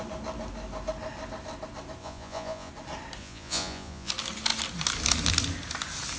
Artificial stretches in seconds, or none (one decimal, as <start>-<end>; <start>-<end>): 2.0-2.7; 3.2-4.1